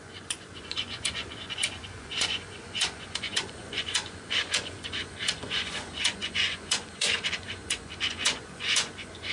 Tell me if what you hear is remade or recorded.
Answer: remade